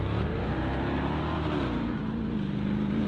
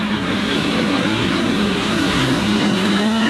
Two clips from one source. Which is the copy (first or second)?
second